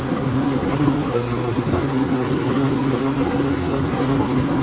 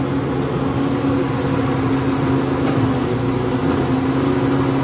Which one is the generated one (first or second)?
first